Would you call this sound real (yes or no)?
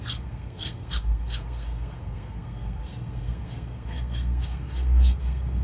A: no